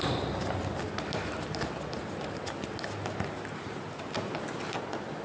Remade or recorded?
recorded